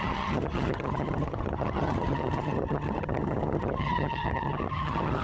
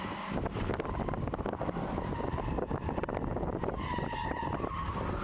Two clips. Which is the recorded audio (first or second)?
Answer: second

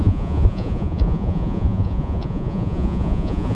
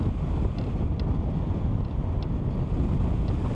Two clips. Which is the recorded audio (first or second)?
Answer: second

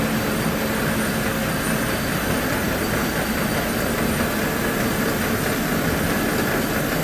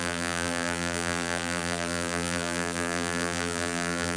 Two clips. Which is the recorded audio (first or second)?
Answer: first